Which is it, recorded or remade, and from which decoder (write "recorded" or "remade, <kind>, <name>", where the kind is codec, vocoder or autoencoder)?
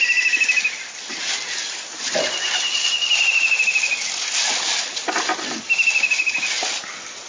recorded